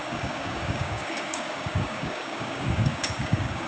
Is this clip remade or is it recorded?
remade